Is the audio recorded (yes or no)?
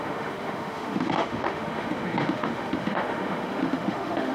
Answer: no